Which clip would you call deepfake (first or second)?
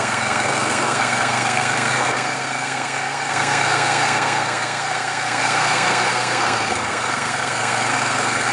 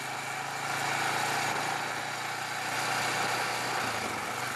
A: first